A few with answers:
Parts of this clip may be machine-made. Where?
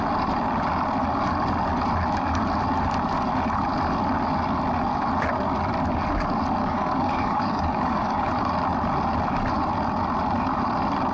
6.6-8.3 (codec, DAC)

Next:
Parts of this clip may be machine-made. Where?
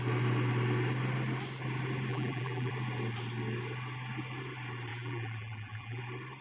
2.1-2.7 (vocoder, BigVGAN v2); 4.9-6.0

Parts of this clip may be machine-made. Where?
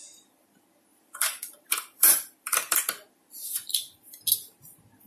0.9-2.8 (vocoder, BigVGAN v2); 3.4-4.2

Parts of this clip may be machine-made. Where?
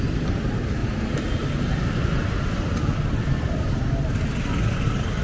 0.8-3.9 (vocoder, BigVGAN v2)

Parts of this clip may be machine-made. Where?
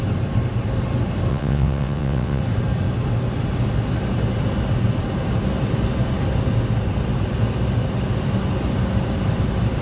1.3-2.4 (vocoder, WaveNeXt)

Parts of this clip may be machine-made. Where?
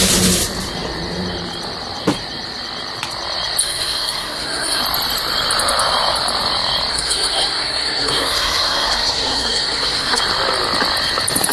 3.6-4.8 (codec, SNAC); 6.9-10.2